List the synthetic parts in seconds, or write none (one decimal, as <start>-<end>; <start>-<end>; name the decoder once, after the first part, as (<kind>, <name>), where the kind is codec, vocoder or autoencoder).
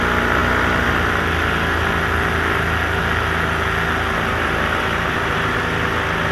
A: 4.3-5.6 (vocoder, BigVGAN v2)